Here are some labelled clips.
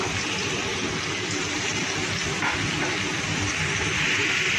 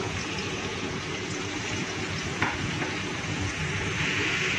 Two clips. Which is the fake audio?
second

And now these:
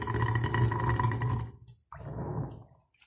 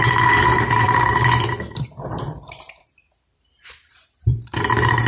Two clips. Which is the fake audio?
second